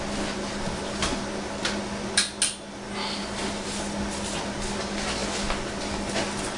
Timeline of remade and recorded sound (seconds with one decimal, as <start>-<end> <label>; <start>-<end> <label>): 0.0-6.6 recorded